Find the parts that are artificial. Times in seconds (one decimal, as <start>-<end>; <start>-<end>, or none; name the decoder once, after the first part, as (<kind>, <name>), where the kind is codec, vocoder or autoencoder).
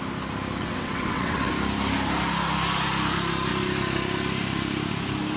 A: 0.6-1.5 (vocoder, WaveNeXt)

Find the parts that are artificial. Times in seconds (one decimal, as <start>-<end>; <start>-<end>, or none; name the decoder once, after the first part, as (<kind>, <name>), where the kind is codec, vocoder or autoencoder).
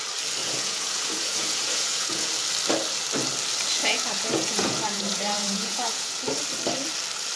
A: 0.4-2.3 (vocoder, Vocos); 3.8-6.2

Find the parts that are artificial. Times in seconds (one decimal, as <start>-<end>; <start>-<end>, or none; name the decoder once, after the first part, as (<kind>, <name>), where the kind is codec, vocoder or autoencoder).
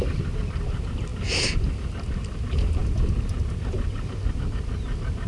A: none